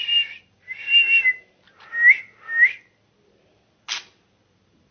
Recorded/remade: recorded